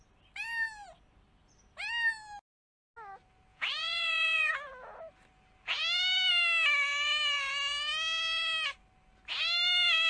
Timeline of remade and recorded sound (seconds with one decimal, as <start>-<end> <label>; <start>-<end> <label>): 0.0-3.5 recorded; 3.5-4.7 remade; 4.7-10.1 recorded